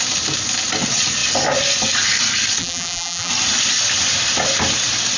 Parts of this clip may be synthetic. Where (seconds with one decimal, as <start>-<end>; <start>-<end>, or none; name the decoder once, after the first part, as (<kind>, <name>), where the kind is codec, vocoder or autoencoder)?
2.6-3.3 (vocoder, BigVGAN v2)